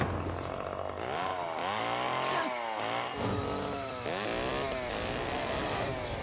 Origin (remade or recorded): recorded